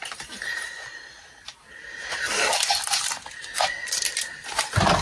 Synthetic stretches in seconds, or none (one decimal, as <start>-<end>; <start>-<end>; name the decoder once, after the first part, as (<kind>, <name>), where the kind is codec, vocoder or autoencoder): 3.2-4.6 (vocoder, BigVGAN v2)